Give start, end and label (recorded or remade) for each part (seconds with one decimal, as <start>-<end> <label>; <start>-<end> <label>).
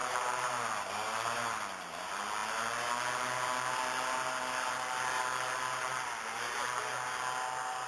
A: 0.0-0.9 remade; 0.9-7.9 recorded